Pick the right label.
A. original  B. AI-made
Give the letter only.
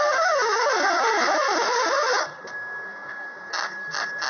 A